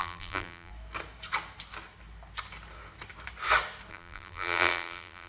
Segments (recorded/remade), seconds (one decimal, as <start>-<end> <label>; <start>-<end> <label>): 0.0-0.7 remade; 0.7-3.9 recorded; 3.9-5.3 remade